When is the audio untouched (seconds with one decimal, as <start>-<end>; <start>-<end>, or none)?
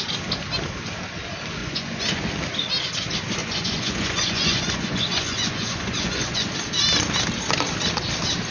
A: 0.0-1.6; 2.2-3.4; 6.5-8.5